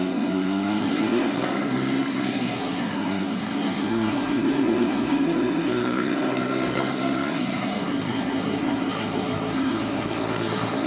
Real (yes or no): no